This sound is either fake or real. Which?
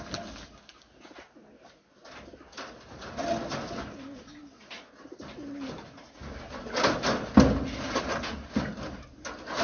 real